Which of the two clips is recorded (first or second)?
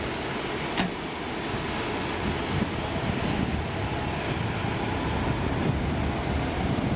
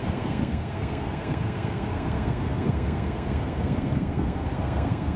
first